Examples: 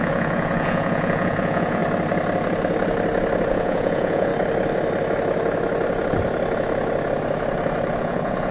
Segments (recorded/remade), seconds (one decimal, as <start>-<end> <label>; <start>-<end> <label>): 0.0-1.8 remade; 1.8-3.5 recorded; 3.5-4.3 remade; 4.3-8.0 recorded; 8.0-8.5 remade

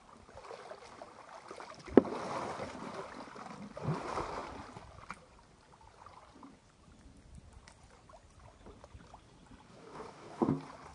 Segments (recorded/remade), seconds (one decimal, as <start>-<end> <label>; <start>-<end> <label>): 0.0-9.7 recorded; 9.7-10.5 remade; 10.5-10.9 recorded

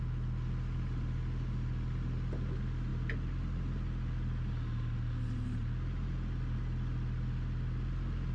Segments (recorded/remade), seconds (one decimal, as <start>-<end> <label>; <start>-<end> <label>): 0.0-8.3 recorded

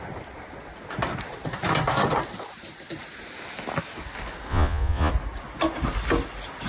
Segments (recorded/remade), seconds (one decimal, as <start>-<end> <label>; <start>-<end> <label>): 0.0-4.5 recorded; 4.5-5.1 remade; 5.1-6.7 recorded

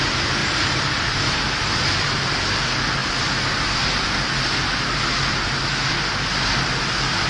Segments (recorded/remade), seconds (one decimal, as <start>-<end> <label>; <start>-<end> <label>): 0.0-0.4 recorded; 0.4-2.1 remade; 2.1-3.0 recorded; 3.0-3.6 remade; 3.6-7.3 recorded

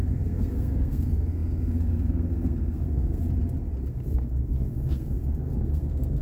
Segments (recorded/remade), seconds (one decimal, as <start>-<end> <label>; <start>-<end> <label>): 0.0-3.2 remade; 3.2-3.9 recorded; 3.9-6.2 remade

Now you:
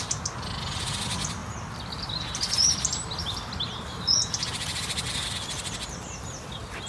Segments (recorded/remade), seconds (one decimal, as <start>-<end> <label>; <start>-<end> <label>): 0.0-6.9 recorded